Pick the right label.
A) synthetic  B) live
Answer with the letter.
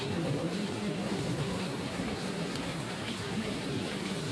A